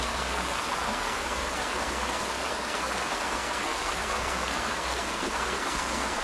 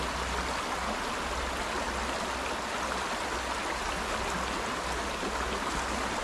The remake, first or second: first